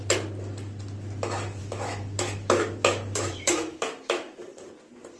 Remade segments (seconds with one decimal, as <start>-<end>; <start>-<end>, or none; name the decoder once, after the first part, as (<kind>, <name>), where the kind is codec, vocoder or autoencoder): 1.6-4.7 (autoencoder, DAC-VAE)